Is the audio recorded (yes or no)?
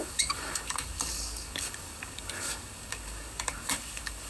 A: no